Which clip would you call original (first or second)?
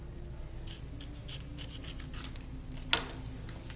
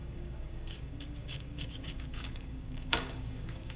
first